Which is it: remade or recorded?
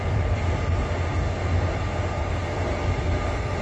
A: recorded